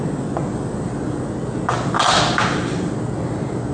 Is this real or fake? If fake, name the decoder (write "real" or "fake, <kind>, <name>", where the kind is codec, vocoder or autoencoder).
real